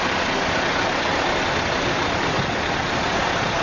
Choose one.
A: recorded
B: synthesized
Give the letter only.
A